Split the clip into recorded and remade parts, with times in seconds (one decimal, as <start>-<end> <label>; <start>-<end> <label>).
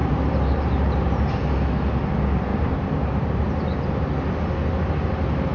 0.0-1.3 remade; 1.3-2.5 recorded; 2.5-3.7 remade; 3.7-5.5 recorded